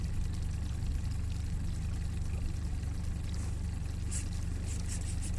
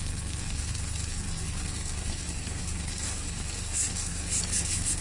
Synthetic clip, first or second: second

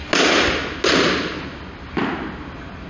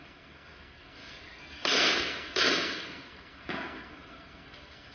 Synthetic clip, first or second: second